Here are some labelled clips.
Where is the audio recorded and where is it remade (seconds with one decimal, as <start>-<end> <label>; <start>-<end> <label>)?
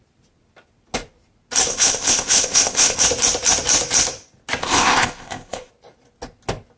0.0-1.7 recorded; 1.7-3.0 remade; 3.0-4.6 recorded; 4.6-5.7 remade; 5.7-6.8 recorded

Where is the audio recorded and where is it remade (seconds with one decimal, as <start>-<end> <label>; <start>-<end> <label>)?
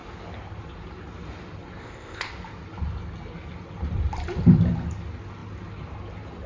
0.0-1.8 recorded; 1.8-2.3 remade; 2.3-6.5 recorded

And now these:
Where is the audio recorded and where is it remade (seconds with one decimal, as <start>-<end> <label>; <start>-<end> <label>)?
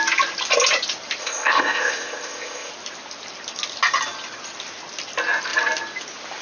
0.0-1.2 recorded; 1.2-2.7 remade; 2.7-6.4 recorded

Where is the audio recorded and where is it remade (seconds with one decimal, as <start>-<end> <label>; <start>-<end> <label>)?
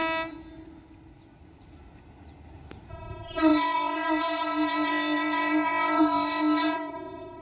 0.0-2.9 recorded; 2.9-7.4 remade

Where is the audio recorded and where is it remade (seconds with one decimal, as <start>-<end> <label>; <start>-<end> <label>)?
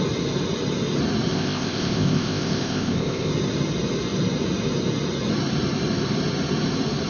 0.0-1.3 recorded; 1.3-3.3 remade; 3.3-7.1 recorded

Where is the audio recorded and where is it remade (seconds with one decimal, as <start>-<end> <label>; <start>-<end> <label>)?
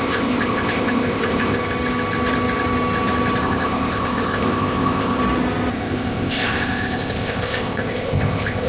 0.0-1.6 remade; 1.6-3.4 recorded; 3.4-5.2 remade; 5.2-5.7 recorded; 5.7-8.7 remade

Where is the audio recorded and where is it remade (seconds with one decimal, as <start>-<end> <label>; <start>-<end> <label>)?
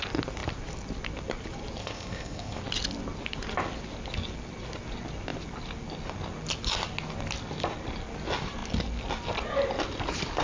0.0-1.8 recorded; 1.8-2.6 remade; 2.6-10.4 recorded